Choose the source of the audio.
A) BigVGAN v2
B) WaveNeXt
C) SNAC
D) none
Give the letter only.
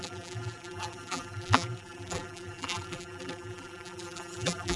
A